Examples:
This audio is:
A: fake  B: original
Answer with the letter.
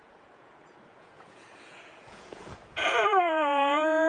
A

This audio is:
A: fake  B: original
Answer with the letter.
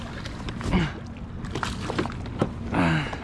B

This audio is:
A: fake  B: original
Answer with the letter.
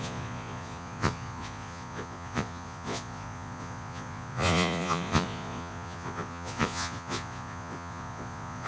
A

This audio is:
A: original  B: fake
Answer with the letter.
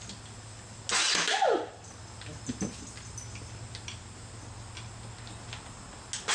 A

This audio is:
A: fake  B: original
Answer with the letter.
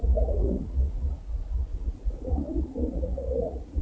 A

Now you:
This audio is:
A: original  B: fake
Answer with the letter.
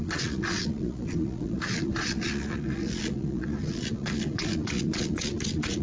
B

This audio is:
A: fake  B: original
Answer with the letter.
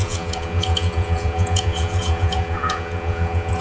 A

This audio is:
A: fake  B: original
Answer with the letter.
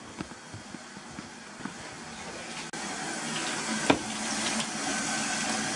B